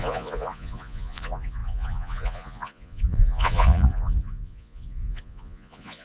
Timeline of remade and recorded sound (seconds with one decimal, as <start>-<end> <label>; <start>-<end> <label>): 0.0-6.0 remade